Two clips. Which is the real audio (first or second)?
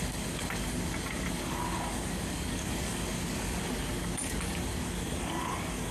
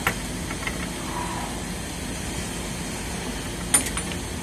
second